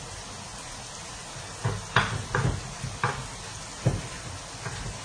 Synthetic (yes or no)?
no